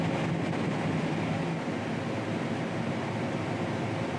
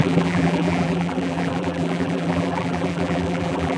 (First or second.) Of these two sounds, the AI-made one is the second